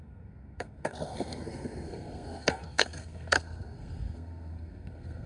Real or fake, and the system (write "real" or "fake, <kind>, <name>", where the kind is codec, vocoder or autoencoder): fake, codec, SNAC